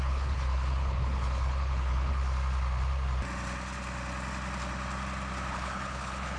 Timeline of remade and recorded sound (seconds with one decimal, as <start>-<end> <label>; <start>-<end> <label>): 0.0-2.2 remade; 2.2-5.5 recorded; 5.5-6.4 remade